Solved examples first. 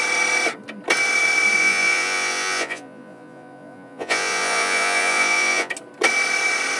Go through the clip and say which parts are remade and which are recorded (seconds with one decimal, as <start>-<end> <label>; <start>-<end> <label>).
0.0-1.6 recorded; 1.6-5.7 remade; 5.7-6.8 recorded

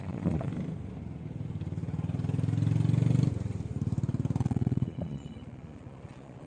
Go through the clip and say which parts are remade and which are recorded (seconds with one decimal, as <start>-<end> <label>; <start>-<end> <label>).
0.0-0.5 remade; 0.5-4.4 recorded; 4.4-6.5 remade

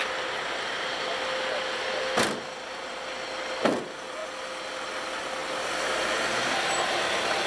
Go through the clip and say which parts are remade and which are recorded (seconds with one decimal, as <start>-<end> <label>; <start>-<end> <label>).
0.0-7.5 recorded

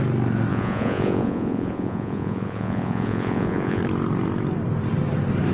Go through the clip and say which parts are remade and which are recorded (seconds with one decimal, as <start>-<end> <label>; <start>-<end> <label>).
0.0-0.5 recorded; 0.5-3.8 remade; 3.8-5.5 recorded

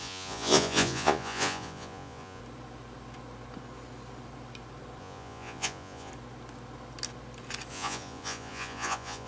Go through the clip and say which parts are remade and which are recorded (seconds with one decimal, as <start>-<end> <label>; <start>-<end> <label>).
0.0-2.4 remade; 2.4-5.0 recorded; 5.0-6.1 remade; 6.1-7.7 recorded; 7.7-9.3 remade